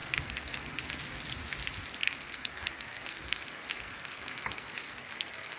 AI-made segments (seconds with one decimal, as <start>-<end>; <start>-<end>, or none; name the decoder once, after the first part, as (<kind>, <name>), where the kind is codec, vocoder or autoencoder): 0.0-1.0 (codec, SNAC); 2.0-5.6